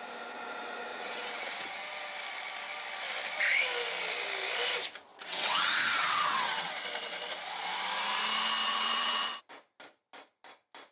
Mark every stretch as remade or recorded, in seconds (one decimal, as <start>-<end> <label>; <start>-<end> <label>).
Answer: 0.0-0.9 recorded; 0.9-1.9 remade; 1.9-5.1 recorded; 5.1-6.7 remade; 6.7-8.6 recorded; 8.6-9.5 remade; 9.5-10.9 recorded